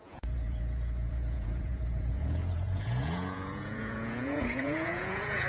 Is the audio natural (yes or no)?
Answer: no